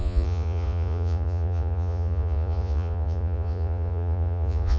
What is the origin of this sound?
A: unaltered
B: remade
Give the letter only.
B